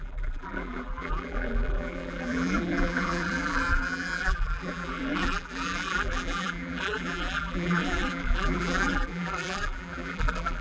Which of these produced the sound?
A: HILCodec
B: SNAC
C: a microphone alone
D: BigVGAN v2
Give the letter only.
D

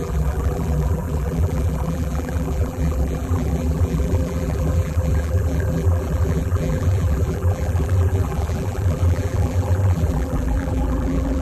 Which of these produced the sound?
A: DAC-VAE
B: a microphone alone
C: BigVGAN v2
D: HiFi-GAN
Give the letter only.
C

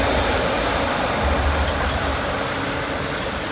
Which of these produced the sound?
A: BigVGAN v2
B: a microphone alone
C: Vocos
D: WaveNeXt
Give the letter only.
A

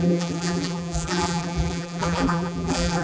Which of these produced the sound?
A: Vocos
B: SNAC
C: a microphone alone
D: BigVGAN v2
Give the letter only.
D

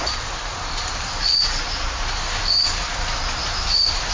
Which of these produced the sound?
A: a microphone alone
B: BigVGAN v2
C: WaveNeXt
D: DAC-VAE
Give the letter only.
B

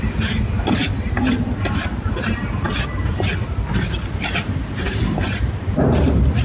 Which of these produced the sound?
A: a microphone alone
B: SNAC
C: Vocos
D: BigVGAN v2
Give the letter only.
D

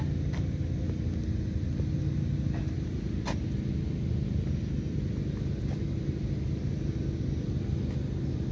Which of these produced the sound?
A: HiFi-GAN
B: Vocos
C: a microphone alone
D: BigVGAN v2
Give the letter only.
C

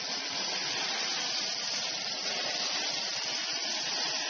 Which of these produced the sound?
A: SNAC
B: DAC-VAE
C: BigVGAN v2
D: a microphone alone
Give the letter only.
D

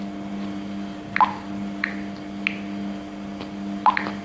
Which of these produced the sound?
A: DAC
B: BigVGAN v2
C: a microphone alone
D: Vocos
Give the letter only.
C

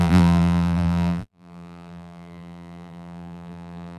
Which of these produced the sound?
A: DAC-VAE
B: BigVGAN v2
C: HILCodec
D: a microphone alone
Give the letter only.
B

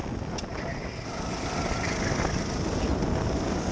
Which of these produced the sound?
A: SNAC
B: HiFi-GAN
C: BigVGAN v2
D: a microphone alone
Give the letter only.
D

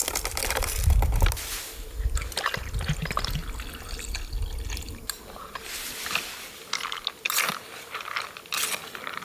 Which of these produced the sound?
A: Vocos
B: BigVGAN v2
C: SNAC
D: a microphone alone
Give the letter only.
D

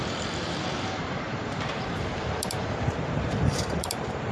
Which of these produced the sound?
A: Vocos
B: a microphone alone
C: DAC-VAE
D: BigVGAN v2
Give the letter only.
D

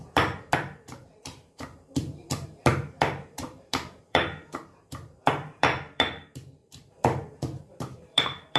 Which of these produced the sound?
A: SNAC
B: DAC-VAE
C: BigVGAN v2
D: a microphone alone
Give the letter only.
C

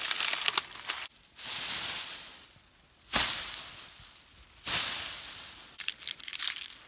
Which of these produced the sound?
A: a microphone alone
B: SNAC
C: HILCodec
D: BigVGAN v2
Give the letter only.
A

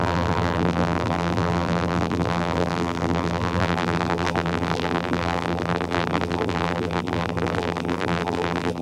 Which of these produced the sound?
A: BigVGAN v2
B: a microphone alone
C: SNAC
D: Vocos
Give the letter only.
A